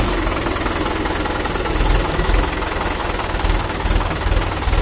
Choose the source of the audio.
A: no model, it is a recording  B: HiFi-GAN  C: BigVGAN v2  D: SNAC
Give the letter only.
A